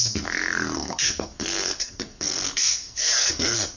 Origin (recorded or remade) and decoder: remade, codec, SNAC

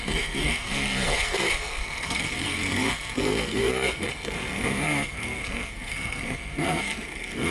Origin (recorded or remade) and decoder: remade, codec, SNAC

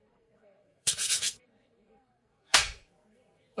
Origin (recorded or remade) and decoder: remade, codec, SNAC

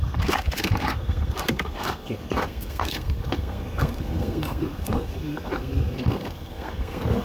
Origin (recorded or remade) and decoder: remade, codec, SNAC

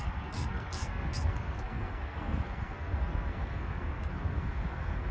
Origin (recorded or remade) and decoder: remade, codec, SNAC